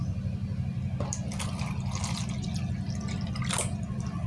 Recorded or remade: recorded